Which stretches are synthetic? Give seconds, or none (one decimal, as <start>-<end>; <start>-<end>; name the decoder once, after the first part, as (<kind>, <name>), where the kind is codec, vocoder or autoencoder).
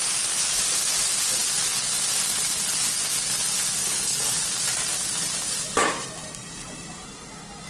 3.8-4.4 (codec, HILCodec)